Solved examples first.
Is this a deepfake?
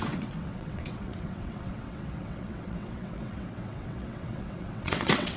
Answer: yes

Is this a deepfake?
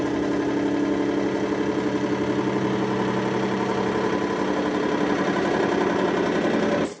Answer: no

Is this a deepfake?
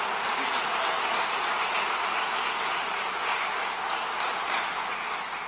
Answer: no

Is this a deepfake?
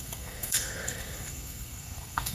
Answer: yes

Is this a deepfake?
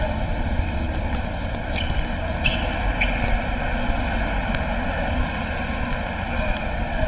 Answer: no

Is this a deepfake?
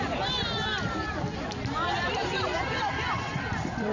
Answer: yes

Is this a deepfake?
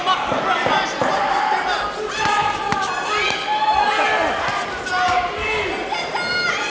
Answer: no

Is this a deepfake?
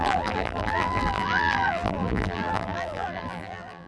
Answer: yes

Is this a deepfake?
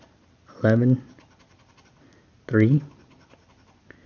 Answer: no